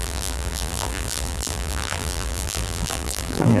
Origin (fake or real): fake